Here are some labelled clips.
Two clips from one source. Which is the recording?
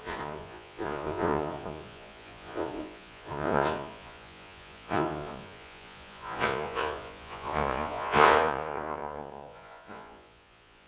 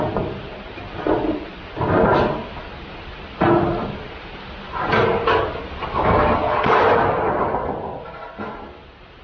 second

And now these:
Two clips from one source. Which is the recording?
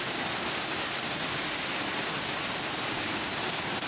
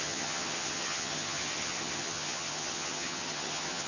first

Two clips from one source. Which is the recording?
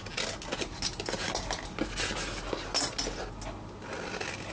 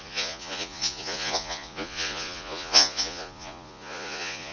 first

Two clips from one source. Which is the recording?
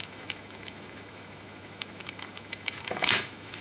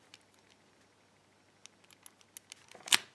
second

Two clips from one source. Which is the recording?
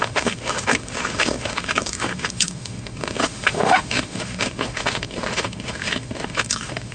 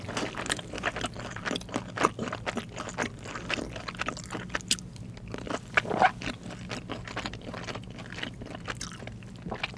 second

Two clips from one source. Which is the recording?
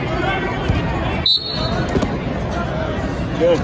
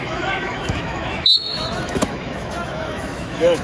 first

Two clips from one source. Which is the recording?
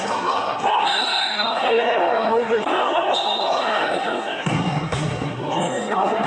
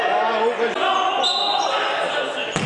second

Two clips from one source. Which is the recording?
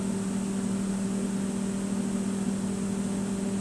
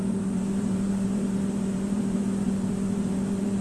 first